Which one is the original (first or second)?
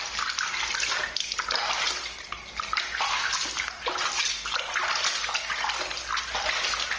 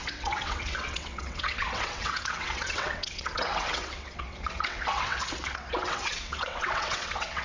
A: first